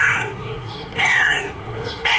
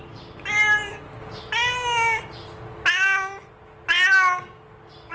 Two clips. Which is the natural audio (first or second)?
second